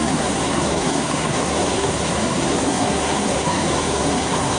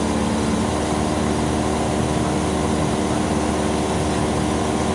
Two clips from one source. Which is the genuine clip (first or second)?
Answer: second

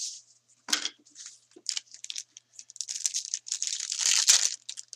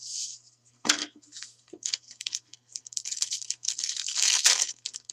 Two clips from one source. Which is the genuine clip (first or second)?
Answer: first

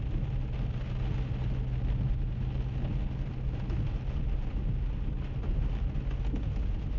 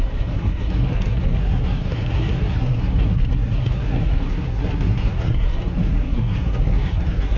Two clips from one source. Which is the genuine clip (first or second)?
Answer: first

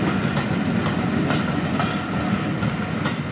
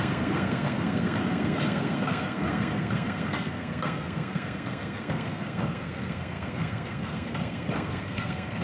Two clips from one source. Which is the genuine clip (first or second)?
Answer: first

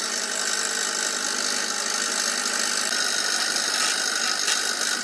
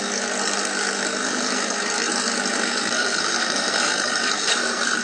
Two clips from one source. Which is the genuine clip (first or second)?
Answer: first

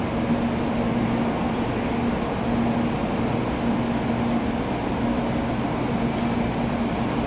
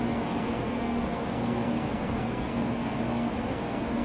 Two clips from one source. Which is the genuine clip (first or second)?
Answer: first